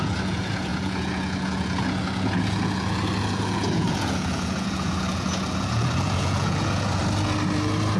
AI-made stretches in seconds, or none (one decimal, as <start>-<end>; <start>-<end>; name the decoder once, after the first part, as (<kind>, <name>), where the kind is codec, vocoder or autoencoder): 0.0-7.0 (vocoder, Vocos)